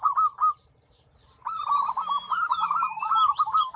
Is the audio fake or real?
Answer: fake